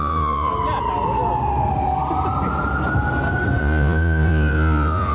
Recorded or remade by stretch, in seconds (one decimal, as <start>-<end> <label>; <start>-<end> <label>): 0.0-0.5 remade; 0.5-3.6 recorded; 3.6-5.1 remade